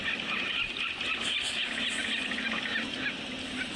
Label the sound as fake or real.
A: real